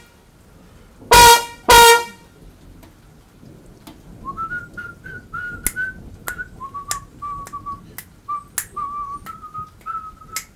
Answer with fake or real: real